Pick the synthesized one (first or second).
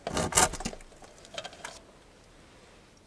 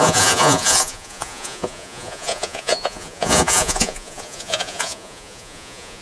second